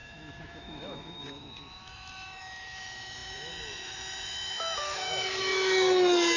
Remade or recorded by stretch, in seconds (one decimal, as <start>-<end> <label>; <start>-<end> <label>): 0.0-6.4 remade